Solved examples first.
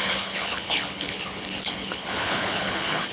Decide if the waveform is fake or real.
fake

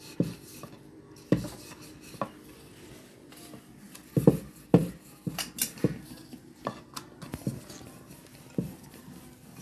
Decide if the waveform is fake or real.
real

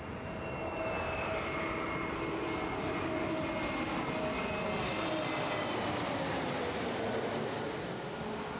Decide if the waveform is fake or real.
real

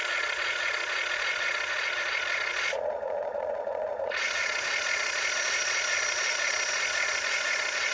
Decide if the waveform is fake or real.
fake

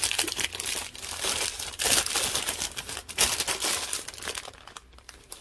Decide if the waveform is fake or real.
real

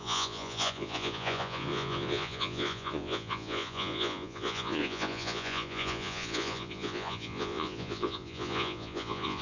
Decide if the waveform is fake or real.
fake